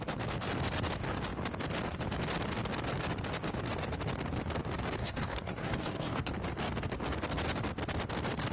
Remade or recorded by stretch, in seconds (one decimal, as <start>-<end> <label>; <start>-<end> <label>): 0.0-5.0 recorded; 5.0-6.3 remade; 6.3-8.5 recorded